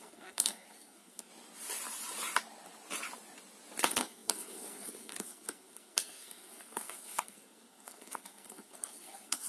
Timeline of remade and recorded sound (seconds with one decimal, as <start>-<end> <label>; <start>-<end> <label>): 0.0-1.3 remade; 1.3-3.8 recorded; 3.8-9.5 remade